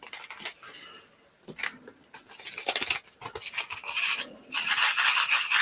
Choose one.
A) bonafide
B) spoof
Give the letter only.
A